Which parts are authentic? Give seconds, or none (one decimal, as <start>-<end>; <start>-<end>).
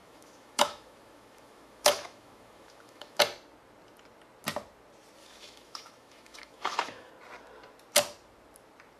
3.2-5.2; 7.1-9.0